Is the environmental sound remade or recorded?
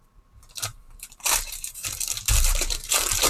remade